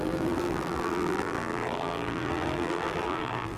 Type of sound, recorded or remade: remade